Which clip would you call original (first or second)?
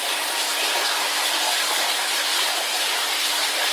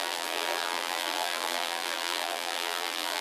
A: first